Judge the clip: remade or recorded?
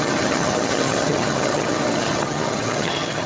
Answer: remade